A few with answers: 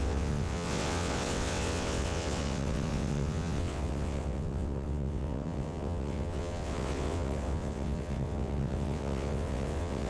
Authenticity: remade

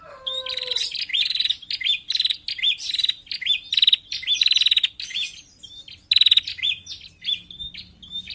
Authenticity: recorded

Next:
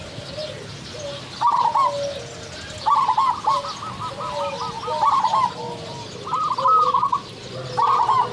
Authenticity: recorded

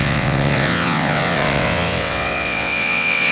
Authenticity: remade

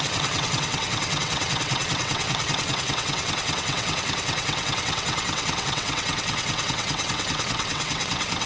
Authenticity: remade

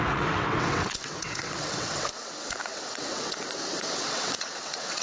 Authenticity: remade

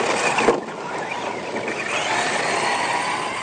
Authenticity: recorded